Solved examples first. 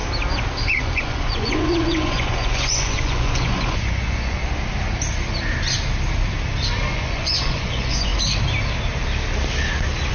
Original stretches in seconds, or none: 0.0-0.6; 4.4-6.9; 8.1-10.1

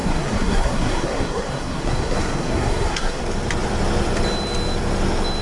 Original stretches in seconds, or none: 3.2-5.4

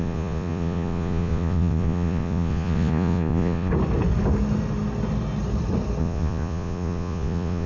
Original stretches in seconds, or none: 3.7-6.0

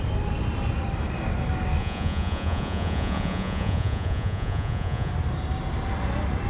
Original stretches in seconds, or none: 0.0-1.8; 5.1-6.5

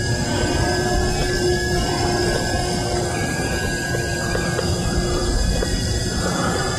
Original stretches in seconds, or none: 0.0-5.2

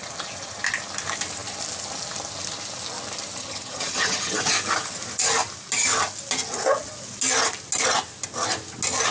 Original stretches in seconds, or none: 0.0-3.4; 4.5-9.1

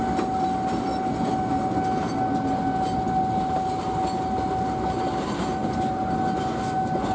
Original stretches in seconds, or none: 0.0-7.1